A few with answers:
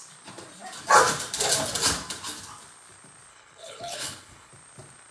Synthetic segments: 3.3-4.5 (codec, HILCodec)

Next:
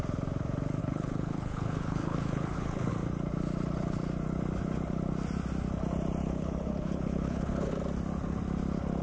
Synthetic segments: 0.8-2.9 (codec, HILCodec); 6.2-7.7

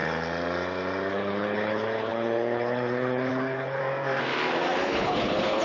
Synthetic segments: 1.1-3.8 (codec, HILCodec); 4.8-5.6

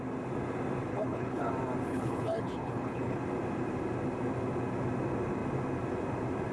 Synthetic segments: 0.9-1.5 (codec, HILCodec); 1.9-3.2